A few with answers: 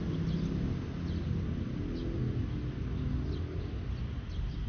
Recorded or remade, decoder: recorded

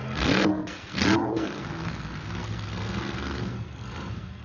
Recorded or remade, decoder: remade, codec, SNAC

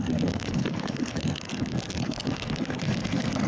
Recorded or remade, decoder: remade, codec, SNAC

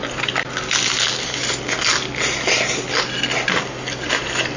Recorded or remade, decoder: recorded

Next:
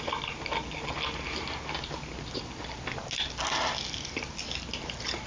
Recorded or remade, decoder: recorded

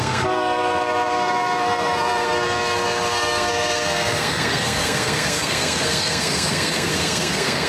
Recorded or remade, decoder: remade, codec, SNAC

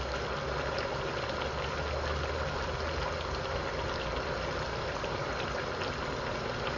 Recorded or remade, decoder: recorded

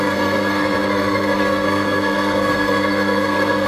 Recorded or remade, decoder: remade, codec, SNAC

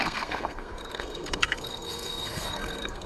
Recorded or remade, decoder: remade, codec, SNAC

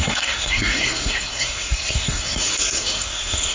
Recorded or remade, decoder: remade, codec, SNAC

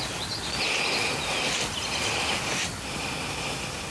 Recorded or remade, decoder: recorded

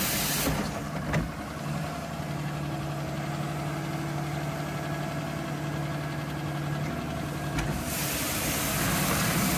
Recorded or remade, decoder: recorded